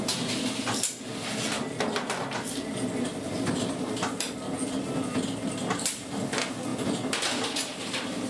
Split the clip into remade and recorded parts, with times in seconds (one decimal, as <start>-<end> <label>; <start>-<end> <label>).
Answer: 0.0-8.3 recorded